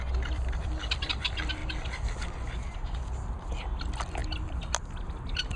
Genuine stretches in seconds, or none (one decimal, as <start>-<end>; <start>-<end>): 1.6-3.8